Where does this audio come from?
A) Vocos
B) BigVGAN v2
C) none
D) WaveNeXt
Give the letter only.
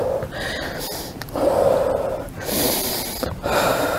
B